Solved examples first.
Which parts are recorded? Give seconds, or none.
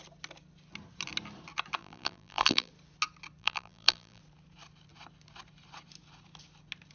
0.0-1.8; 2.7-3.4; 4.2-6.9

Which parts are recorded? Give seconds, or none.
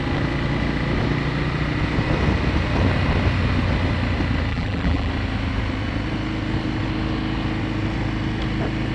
0.0-4.5; 5.1-8.9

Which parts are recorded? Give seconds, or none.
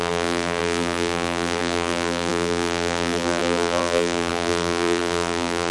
none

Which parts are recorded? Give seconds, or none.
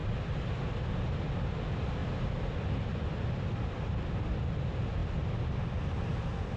0.0-2.0; 3.3-6.6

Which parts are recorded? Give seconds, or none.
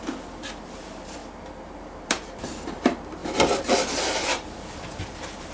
1.2-1.8; 3.2-4.3